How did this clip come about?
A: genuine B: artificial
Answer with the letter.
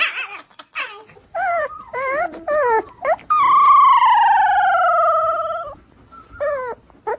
B